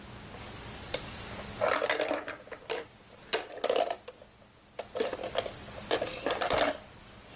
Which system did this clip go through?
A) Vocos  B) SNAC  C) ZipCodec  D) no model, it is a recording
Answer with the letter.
D